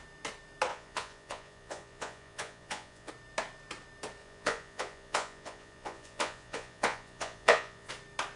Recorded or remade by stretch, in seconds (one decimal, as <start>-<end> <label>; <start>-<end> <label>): 0.0-0.7 recorded; 0.7-3.1 remade; 3.1-4.2 recorded; 4.2-7.9 remade; 7.9-8.4 recorded